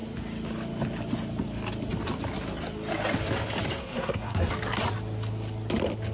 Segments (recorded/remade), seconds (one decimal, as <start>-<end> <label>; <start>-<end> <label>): 0.0-3.8 recorded; 3.8-4.5 remade; 4.5-6.1 recorded